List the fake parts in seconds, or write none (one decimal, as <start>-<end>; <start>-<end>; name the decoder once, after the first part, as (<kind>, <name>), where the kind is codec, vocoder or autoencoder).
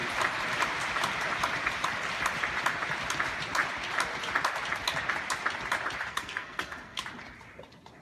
6.1-7.0 (codec, SNAC)